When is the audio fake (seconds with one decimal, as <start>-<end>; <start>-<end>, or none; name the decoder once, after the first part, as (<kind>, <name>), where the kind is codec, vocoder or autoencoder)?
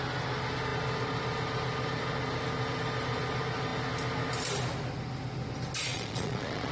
5.9-6.7 (vocoder, Vocos)